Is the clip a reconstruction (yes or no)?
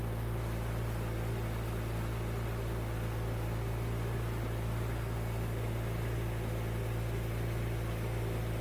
no